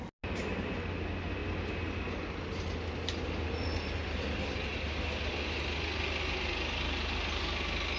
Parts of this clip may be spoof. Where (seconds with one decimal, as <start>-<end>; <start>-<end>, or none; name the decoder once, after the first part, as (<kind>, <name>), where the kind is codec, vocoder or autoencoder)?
none